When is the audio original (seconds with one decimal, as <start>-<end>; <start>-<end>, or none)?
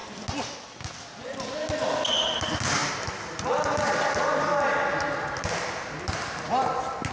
0.0-7.1